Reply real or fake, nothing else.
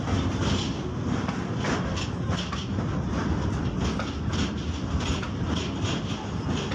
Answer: real